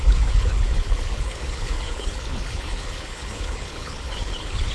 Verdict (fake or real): fake